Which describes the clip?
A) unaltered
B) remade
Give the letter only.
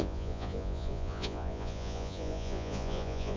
B